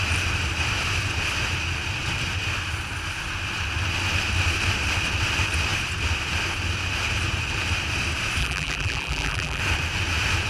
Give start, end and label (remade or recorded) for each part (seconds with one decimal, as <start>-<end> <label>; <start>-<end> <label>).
0.0-8.4 recorded; 8.4-9.6 remade; 9.6-10.5 recorded